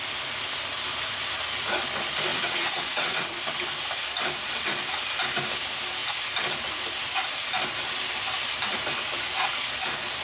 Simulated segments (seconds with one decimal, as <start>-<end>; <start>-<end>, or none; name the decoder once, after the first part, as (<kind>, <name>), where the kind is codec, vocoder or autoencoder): 2.3-3.5 (vocoder, WaveNeXt)